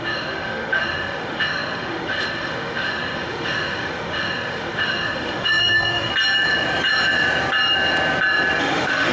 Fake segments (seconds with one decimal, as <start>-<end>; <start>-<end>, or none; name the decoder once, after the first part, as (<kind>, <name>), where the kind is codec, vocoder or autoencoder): 0.0-6.1 (autoencoder, DAC-VAE); 8.6-9.1